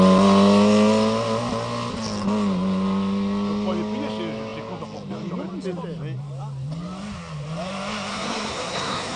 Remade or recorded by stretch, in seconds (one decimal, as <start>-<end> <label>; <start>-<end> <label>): 0.0-8.1 recorded; 8.1-9.2 remade